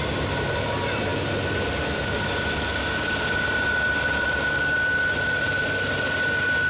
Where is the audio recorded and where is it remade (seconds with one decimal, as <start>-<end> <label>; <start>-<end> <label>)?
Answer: 0.0-6.7 recorded